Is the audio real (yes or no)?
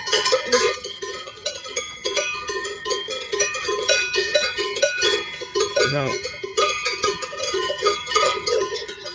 no